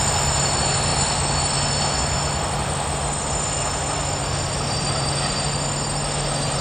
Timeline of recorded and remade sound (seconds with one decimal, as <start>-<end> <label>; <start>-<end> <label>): 0.0-6.6 recorded